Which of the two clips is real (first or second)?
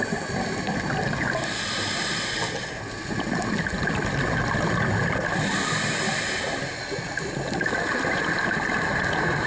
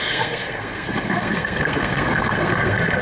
first